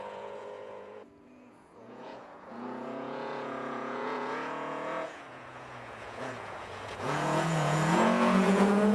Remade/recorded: remade